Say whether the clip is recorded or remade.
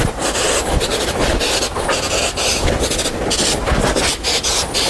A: recorded